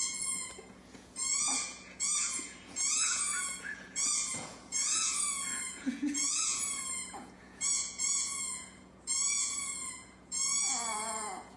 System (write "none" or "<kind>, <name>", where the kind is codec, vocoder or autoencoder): vocoder, Vocos